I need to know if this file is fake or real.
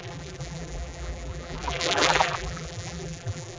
fake